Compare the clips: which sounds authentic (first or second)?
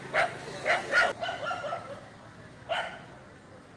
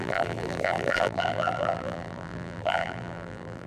first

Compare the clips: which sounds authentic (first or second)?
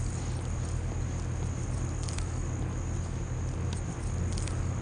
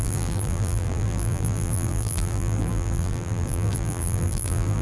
first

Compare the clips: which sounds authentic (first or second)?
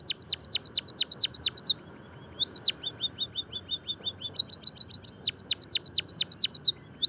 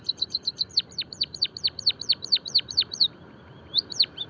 first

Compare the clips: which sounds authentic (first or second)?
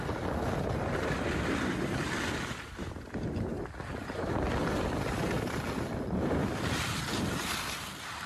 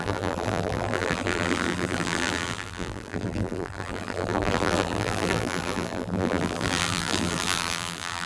first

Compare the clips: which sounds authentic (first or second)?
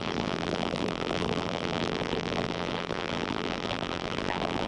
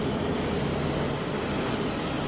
second